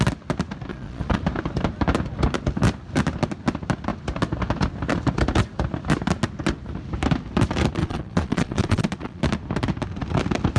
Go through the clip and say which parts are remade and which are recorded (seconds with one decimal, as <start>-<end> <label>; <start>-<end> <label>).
0.0-0.7 recorded; 0.7-1.2 remade; 1.2-7.8 recorded; 7.8-9.2 remade; 9.2-10.6 recorded